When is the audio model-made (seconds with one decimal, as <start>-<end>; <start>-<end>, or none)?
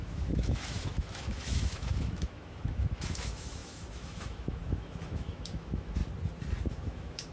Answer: 0.0-6.0; 6.7-7.3